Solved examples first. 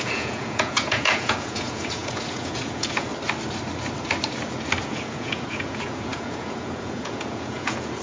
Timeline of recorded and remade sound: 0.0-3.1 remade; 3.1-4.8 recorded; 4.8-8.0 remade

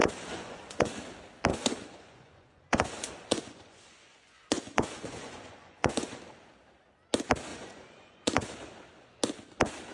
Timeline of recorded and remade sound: 0.0-0.9 remade; 0.9-1.5 recorded; 1.5-6.2 remade; 6.2-7.5 recorded; 7.5-8.5 remade; 8.5-9.9 recorded

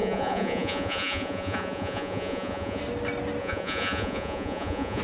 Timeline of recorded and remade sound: 0.0-2.8 remade; 2.8-3.4 recorded; 3.4-5.0 remade

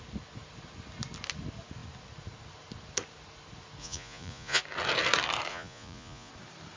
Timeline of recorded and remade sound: 0.0-3.8 recorded; 3.8-4.6 remade; 4.6-5.5 recorded; 5.5-6.3 remade; 6.3-6.8 recorded